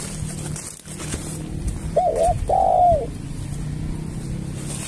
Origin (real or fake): real